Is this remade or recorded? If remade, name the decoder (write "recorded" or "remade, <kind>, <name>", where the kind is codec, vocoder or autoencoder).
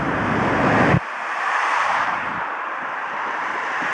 remade, vocoder, BigVGAN v2